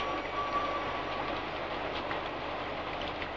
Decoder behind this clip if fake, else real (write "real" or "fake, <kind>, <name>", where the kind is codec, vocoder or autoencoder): real